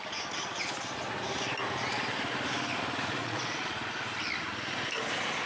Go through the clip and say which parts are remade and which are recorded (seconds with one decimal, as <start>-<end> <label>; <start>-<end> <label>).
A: 0.0-3.2 recorded; 3.2-3.9 remade; 3.9-5.5 recorded